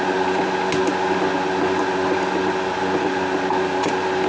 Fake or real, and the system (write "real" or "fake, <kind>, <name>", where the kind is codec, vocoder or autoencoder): real